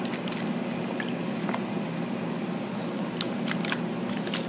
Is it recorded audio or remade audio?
recorded